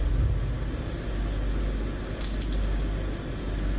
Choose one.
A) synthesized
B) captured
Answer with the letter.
B